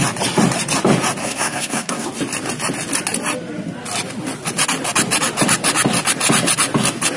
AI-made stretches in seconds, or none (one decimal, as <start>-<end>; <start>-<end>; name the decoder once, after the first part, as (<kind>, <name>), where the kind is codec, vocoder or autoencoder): 1.2-2.1 (codec, SNAC)